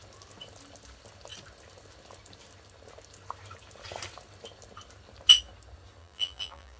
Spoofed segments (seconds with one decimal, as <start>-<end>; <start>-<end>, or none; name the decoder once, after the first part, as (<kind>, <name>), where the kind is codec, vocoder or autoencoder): 6.0-6.8 (vocoder, BigVGAN v2)